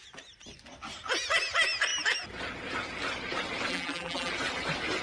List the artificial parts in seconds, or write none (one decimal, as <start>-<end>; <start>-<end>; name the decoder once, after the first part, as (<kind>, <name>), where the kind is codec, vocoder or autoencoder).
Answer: 3.7-4.3 (vocoder, BigVGAN v2)